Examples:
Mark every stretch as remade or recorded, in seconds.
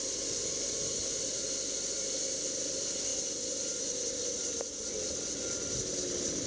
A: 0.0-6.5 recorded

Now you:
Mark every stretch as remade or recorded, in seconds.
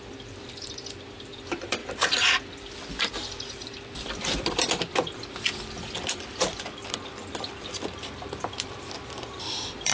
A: 0.0-9.9 remade